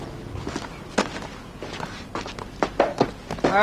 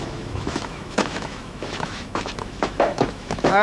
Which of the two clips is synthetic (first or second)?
second